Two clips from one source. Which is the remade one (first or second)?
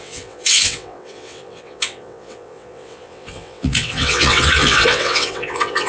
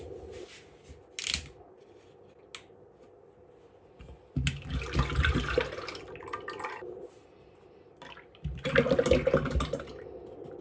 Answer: first